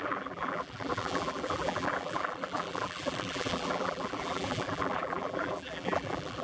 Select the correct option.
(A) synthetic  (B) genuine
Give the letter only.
A